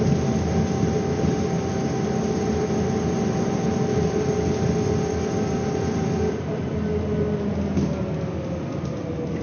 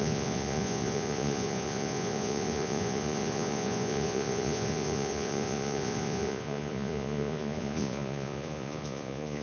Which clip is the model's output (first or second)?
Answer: second